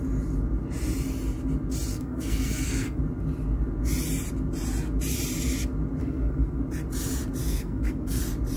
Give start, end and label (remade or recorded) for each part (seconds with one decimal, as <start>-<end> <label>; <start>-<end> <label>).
0.0-1.9 recorded; 1.9-3.0 remade; 3.0-6.0 recorded; 6.0-6.6 remade; 6.6-7.4 recorded; 7.4-8.2 remade; 8.2-8.6 recorded